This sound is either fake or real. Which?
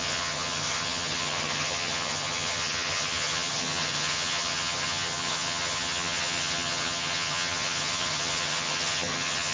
fake